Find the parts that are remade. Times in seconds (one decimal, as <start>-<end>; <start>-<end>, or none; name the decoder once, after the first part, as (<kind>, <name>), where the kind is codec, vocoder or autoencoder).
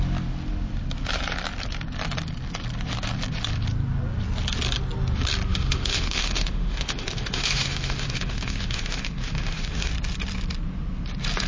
5.5-9.9 (autoencoder, DAC-VAE)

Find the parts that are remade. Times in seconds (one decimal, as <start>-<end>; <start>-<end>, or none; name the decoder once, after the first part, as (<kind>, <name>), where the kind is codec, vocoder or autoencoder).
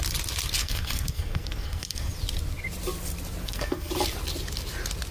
0.6-2.1 (codec, SNAC); 3.4-3.9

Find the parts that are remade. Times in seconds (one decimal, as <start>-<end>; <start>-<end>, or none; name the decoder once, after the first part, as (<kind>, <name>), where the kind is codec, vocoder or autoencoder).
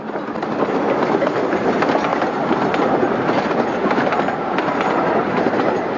none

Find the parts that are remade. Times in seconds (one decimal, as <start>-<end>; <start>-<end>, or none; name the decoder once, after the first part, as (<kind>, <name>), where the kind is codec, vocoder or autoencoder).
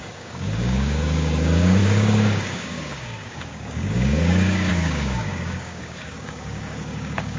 0.0-7.4 (codec, DAC)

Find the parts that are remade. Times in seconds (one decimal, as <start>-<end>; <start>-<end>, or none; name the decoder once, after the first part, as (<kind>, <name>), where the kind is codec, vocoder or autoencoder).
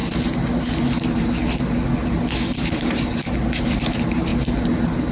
2.7-3.1 (vocoder, BigVGAN v2); 3.7-4.3